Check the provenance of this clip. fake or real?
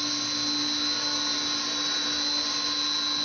real